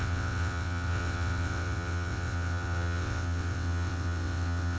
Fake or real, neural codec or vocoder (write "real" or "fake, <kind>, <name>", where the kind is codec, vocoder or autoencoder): fake, vocoder, WaveNeXt